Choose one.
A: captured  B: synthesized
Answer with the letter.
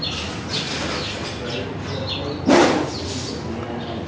A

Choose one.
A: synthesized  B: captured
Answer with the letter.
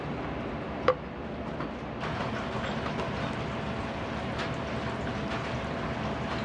B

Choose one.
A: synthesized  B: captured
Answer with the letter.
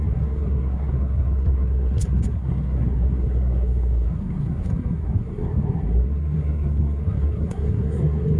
A